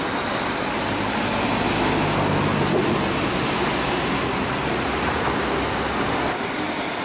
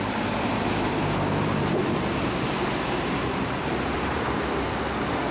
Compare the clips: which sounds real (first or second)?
first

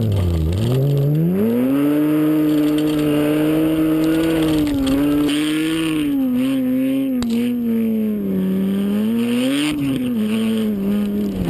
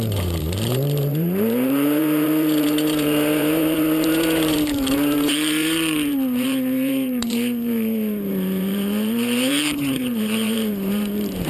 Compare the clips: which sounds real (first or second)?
first